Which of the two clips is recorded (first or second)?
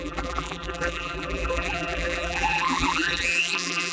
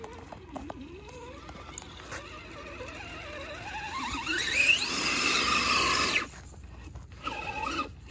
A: second